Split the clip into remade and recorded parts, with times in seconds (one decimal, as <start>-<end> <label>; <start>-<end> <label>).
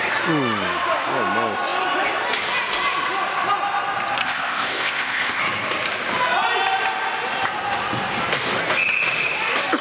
0.0-4.2 recorded; 4.2-5.4 remade; 5.4-9.8 recorded